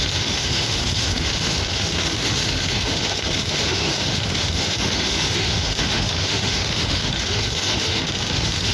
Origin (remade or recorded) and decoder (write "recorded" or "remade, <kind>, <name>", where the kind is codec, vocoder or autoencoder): remade, autoencoder, DAC-VAE